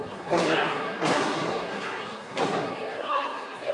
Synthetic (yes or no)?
yes